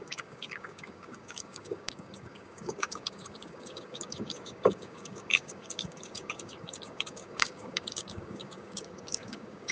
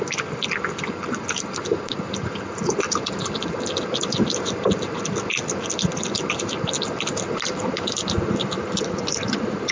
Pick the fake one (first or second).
first